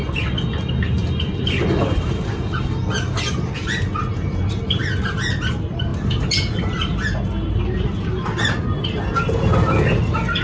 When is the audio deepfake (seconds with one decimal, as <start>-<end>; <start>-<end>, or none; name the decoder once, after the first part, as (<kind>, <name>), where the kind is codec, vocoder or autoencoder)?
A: none